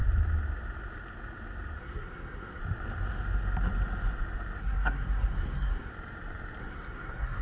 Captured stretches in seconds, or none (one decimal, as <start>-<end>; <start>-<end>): 0.0-1.8; 2.6-4.6; 5.9-6.6